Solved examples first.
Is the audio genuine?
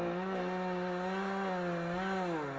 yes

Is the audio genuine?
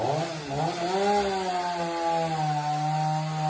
yes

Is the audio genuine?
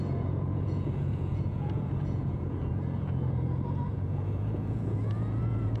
no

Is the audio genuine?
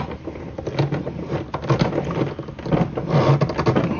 yes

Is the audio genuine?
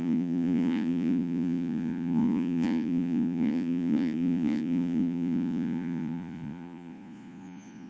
no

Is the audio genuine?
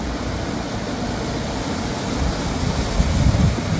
yes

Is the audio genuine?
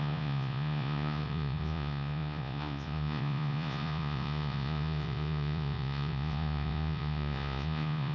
no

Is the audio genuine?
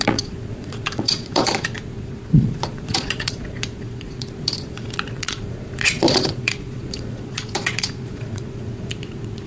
no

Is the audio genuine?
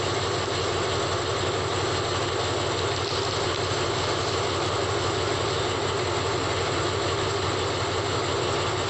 yes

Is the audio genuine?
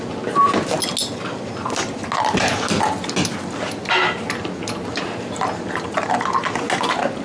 yes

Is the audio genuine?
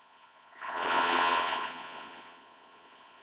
no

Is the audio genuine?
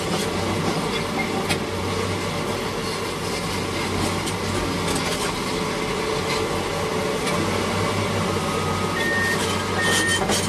yes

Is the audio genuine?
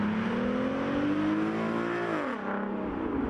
yes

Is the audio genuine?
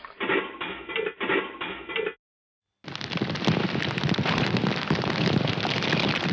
yes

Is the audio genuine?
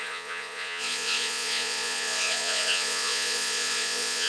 no